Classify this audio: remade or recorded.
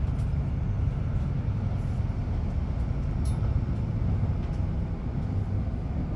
recorded